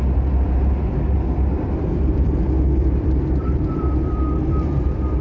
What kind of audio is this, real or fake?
fake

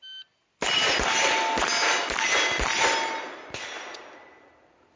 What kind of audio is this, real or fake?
real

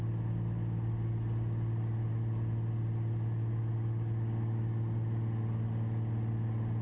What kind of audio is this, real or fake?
real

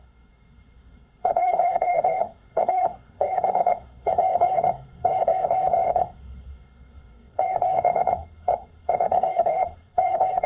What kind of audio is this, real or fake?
fake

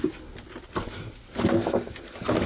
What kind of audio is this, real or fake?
real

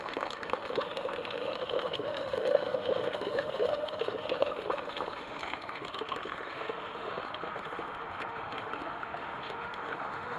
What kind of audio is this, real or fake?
fake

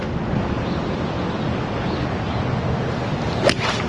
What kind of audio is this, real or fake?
real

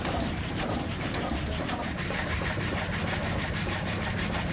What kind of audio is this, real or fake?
fake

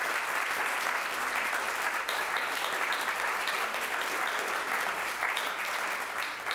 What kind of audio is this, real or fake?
fake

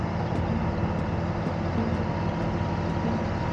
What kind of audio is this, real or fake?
real